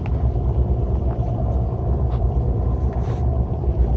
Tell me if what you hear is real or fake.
fake